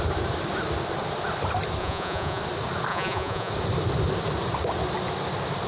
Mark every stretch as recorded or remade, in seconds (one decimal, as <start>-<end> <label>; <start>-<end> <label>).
0.0-1.8 recorded; 1.8-2.4 remade; 2.4-2.9 recorded; 2.9-3.5 remade; 3.5-5.7 recorded